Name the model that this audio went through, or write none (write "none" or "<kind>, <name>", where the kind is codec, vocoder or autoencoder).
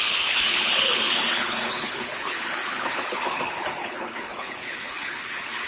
codec, HILCodec